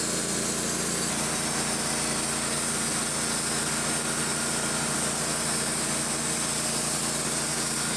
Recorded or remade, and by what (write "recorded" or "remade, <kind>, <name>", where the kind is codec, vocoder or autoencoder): recorded